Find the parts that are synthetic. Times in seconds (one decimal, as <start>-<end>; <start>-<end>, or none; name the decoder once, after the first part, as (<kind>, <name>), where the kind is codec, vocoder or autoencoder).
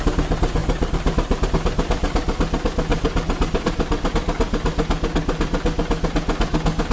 0.6-1.5 (vocoder, BigVGAN v2); 2.9-4.1